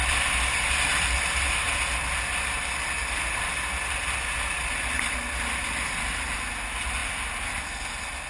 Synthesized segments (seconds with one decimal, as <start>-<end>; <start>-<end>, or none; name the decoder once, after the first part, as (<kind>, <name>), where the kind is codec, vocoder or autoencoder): none